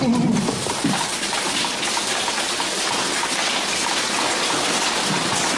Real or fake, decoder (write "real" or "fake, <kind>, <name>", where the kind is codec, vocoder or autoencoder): real